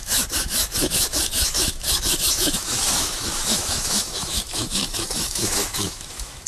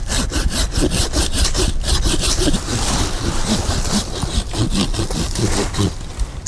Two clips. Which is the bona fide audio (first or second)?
second